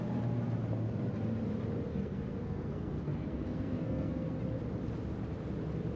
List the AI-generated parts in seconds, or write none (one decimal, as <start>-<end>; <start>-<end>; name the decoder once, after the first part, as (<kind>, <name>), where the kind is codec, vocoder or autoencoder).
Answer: 1.9-4.4 (codec, SNAC)